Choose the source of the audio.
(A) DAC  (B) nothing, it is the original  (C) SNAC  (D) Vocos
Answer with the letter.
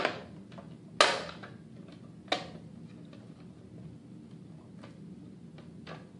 B